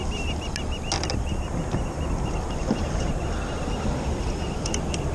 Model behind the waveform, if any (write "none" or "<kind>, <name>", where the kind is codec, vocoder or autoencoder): none